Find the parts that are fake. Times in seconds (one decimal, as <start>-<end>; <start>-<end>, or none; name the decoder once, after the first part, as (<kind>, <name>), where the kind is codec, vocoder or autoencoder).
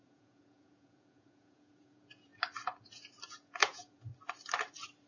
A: 0.0-2.3 (vocoder, Vocos); 3.3-4.1